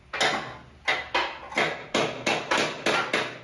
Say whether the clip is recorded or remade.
recorded